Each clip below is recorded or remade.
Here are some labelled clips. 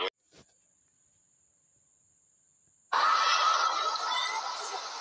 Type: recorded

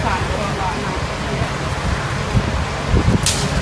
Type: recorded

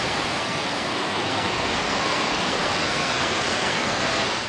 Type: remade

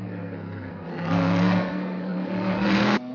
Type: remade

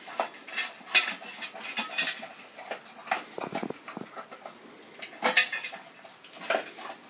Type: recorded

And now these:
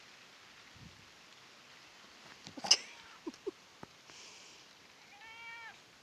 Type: recorded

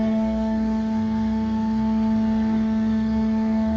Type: remade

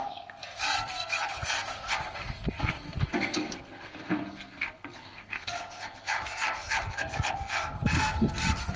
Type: remade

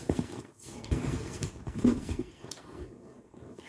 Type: remade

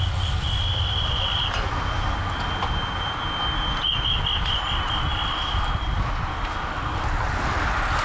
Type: recorded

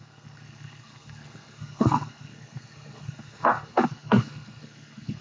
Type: remade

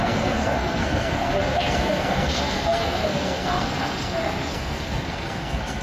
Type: remade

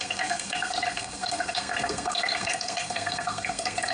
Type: remade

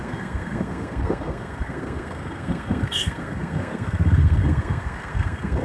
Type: remade